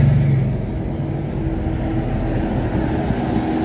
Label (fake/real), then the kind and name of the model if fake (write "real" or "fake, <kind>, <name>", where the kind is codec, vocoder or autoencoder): real